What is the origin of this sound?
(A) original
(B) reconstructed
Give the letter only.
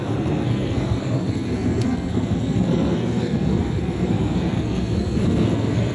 B